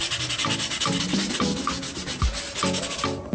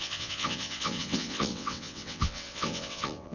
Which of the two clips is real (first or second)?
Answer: first